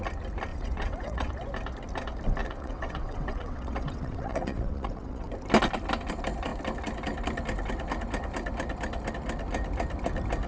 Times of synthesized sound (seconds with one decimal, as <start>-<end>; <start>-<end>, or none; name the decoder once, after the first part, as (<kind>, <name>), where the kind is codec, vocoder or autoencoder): 0.5-1.3 (vocoder, WaveNeXt); 2.4-5.3